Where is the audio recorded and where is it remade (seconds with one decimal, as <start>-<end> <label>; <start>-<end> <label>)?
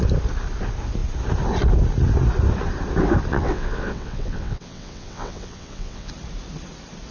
0.0-3.3 recorded; 3.3-6.1 remade; 6.1-7.1 recorded